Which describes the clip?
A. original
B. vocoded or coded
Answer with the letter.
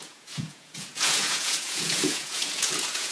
B